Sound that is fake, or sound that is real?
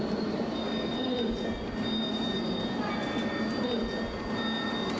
real